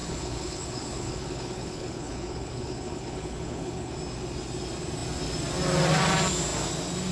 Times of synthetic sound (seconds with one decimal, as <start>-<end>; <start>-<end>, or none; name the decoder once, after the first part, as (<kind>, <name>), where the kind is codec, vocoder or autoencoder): 0.0-3.9 (codec, HILCodec)

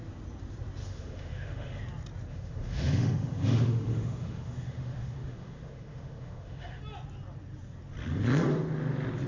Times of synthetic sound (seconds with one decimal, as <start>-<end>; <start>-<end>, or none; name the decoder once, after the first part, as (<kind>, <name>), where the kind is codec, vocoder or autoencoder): 0.8-1.8 (autoencoder, DAC-VAE); 2.3-6.8

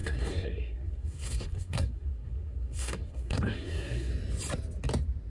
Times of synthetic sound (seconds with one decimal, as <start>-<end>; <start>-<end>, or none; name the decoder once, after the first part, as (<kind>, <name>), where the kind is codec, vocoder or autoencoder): 0.0-4.1 (codec, SNAC)

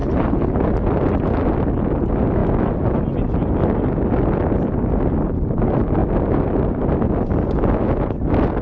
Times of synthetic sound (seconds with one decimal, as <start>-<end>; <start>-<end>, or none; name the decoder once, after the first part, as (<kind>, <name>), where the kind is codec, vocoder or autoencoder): 0.0-0.6 (codec, HILCodec)

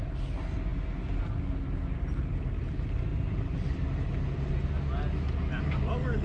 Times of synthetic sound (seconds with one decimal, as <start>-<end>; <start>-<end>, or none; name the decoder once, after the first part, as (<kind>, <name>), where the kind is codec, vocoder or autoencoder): none

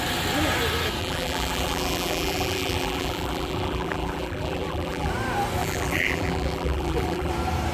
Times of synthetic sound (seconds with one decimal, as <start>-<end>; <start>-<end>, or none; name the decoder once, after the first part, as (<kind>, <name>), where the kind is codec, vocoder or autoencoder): 1.0-5.1 (vocoder, BigVGAN v2); 5.6-7.3

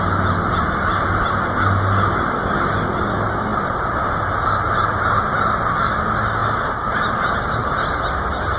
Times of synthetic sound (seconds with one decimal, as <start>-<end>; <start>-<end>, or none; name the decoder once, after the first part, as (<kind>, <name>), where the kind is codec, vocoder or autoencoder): none

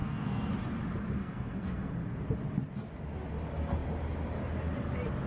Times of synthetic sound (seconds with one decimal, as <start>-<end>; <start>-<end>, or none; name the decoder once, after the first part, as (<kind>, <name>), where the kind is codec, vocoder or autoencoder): 0.0-0.5 (codec, SNAC); 1.2-1.9